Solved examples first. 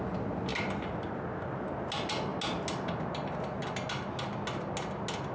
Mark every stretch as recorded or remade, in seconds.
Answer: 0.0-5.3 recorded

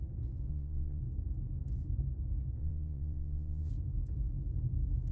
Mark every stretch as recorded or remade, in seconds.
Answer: 0.0-0.5 recorded; 0.5-1.0 remade; 1.0-2.6 recorded; 2.6-3.7 remade; 3.7-5.1 recorded

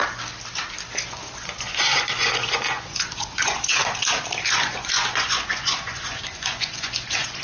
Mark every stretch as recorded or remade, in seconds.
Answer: 0.0-1.1 recorded; 1.1-3.8 remade; 3.8-4.5 recorded; 4.5-7.4 remade